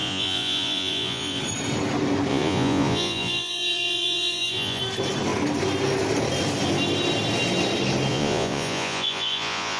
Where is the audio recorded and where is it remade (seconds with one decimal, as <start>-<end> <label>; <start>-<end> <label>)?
0.0-1.4 remade; 1.4-2.3 recorded; 2.3-4.8 remade; 4.8-8.1 recorded; 8.1-9.8 remade

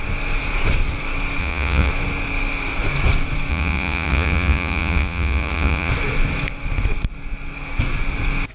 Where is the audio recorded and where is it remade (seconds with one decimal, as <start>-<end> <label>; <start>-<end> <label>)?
0.0-1.4 recorded; 1.4-1.9 remade; 1.9-3.5 recorded; 3.5-5.9 remade; 5.9-8.5 recorded

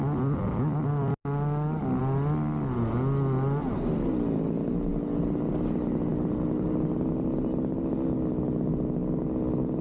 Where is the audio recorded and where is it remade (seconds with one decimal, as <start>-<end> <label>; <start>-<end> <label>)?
0.0-1.1 recorded; 1.1-2.0 remade; 2.0-9.8 recorded

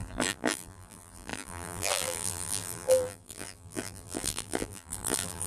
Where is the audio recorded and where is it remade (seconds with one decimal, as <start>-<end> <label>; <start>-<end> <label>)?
0.0-5.5 remade

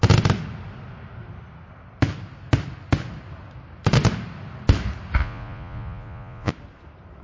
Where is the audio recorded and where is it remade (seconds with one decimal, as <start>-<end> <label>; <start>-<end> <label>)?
0.0-5.2 recorded; 5.2-6.5 remade; 6.5-7.2 recorded